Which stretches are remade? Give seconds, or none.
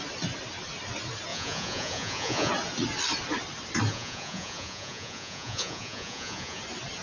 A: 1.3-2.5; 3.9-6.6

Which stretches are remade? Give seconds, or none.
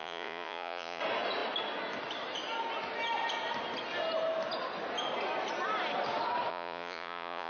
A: 0.0-1.0; 6.5-7.5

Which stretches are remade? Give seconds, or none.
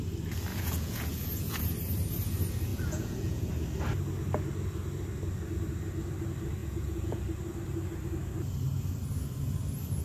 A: 0.5-1.6; 2.7-3.5; 6.6-7.2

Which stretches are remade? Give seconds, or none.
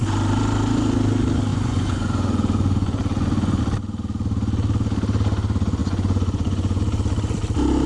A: 1.5-3.6; 5.8-6.8